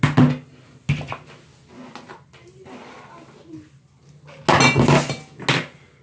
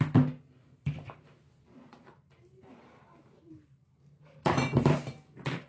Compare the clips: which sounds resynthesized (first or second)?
second